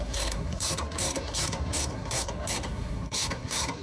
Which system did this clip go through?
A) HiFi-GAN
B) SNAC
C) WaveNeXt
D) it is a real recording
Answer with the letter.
B